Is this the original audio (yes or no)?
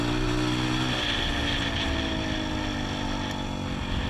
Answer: yes